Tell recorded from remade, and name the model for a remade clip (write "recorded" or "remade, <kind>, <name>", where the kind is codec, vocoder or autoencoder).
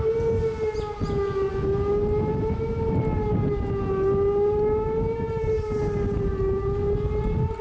recorded